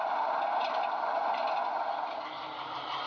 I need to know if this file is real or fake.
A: real